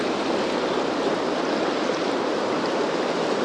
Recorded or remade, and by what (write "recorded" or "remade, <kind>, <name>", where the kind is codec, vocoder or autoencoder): recorded